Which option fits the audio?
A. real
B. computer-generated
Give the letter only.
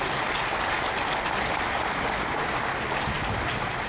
A